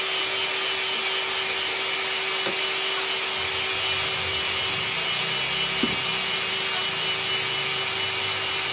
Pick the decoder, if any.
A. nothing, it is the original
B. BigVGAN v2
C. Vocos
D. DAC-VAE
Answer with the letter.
A